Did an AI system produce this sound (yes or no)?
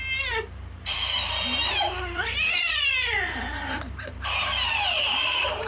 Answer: yes